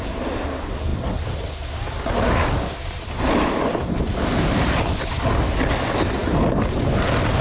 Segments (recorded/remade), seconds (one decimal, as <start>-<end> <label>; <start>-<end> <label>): 0.0-7.4 recorded